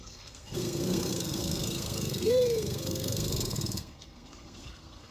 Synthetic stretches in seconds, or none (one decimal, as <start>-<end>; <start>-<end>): 0.0-5.1